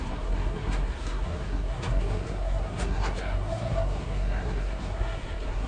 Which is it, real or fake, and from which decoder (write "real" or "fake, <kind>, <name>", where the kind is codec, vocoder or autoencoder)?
fake, codec, SNAC